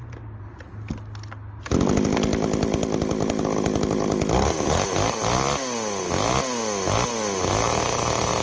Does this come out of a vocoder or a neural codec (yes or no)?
no